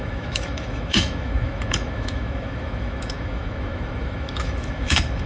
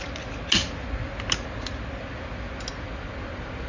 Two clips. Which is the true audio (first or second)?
second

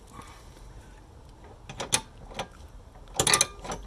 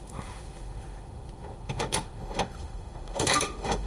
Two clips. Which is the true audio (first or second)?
first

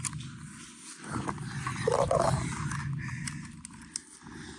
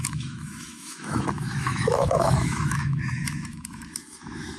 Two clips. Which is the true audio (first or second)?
first